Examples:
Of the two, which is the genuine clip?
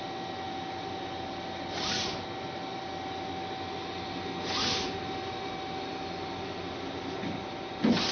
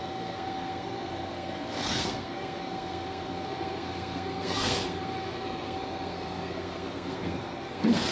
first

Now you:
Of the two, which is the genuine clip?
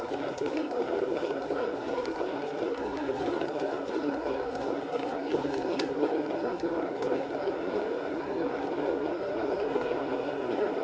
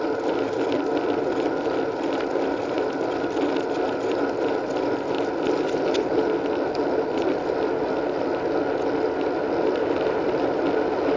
second